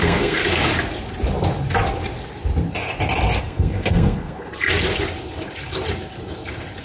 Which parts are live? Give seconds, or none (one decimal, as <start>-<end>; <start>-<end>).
0.4-3.4; 4.5-6.8